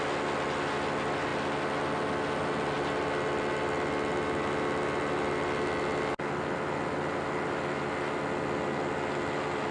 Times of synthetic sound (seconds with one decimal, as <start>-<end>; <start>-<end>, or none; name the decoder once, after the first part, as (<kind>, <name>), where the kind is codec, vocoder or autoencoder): none